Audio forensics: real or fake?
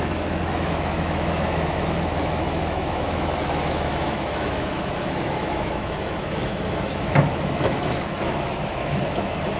fake